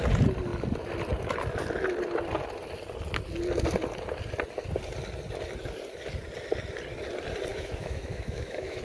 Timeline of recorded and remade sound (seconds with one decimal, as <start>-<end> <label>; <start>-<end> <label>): 0.0-7.5 recorded; 7.5-8.8 remade